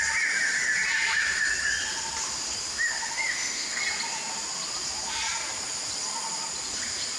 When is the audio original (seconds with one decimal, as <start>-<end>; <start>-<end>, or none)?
0.0-2.7; 3.8-7.2

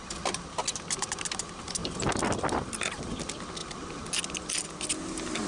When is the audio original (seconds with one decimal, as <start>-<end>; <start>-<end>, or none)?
0.0-5.5

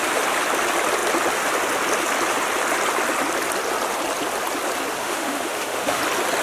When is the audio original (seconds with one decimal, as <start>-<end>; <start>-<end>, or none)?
0.0-5.0; 6.0-6.4

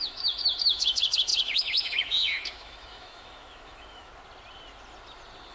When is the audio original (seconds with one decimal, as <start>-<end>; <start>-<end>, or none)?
4.1-5.5

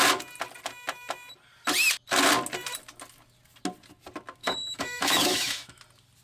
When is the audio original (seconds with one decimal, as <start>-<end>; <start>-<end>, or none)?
0.0-4.4; 5.8-6.2

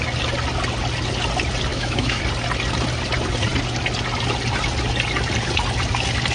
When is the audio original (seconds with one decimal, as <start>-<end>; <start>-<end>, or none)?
0.0-1.7; 2.2-6.3

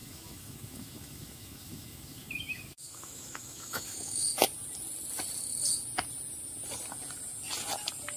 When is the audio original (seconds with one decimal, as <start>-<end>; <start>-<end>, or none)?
4.3-8.2

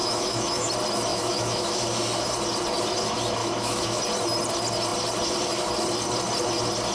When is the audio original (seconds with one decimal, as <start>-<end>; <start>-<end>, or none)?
0.7-1.1; 1.8-3.4; 4.0-6.9